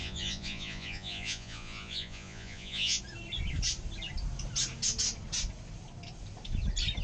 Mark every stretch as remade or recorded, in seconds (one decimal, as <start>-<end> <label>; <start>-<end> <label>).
0.0-3.0 remade; 3.0-7.0 recorded